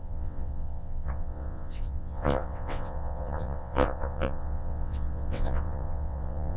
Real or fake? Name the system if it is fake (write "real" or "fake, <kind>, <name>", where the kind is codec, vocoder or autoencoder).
fake, vocoder, WaveNeXt